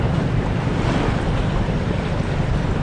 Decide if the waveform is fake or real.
real